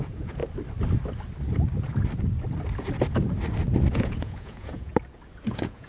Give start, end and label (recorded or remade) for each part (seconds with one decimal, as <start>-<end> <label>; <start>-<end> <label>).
0.0-0.4 remade; 0.4-3.9 recorded; 3.9-4.9 remade; 4.9-5.4 recorded; 5.4-5.9 remade